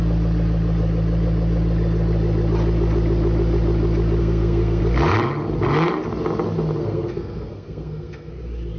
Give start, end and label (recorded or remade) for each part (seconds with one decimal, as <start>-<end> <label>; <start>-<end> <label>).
0.0-4.2 recorded; 4.2-4.8 remade; 4.8-6.8 recorded; 6.8-8.3 remade; 8.3-8.8 recorded